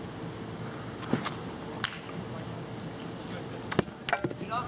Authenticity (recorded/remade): recorded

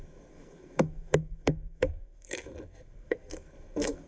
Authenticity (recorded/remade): remade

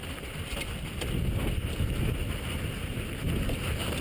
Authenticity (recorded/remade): recorded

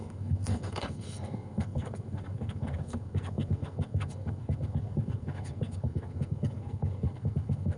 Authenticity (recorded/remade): remade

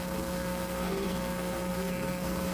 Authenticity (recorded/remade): remade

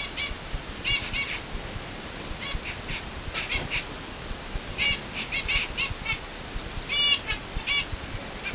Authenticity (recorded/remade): recorded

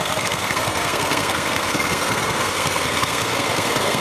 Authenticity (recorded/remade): remade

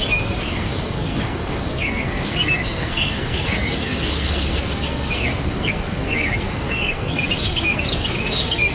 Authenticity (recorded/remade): remade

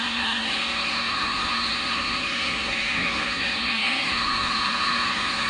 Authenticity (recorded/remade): remade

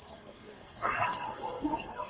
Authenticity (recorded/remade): remade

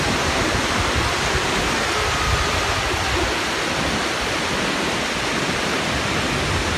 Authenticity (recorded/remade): recorded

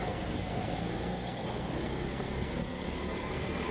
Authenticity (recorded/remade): remade